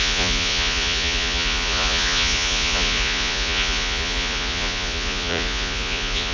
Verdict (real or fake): fake